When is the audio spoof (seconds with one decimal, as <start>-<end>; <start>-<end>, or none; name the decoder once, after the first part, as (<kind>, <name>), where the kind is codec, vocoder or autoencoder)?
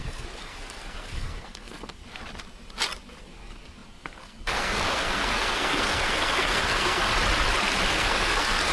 0.0-2.0 (codec, SNAC); 3.2-7.1; 7.9-8.7